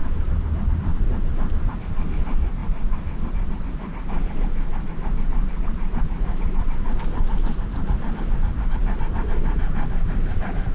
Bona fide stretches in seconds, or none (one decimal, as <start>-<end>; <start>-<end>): 2.6-4.3; 8.8-9.4

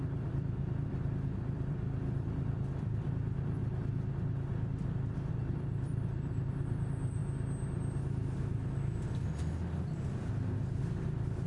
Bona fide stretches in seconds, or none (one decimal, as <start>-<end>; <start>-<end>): 3.6-5.3; 7.2-10.8

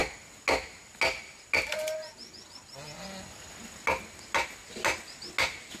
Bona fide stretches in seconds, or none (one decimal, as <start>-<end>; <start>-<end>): 0.0-5.8

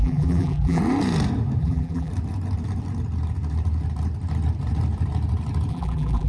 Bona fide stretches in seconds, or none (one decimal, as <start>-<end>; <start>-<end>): 0.8-1.6; 2.1-5.7